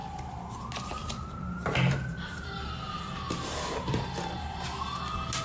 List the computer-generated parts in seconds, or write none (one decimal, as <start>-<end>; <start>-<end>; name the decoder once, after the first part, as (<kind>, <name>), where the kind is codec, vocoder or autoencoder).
0.0-0.6 (vocoder, BigVGAN v2); 1.0-4.0